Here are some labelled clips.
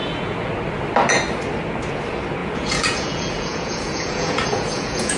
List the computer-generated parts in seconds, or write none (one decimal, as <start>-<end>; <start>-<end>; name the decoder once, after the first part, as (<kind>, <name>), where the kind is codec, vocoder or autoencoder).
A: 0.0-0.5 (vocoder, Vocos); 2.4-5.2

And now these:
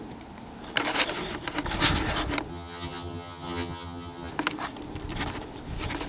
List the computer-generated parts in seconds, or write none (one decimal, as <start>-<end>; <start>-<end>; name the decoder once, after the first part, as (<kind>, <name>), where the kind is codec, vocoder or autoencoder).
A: 2.5-4.3 (vocoder, HiFi-GAN)

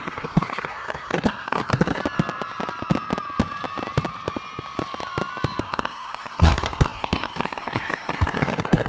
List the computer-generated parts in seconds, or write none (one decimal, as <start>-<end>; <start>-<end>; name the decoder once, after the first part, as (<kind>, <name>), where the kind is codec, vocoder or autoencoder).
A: 0.0-2.0 (codec, SNAC); 5.6-8.9